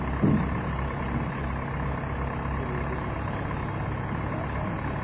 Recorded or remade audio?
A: recorded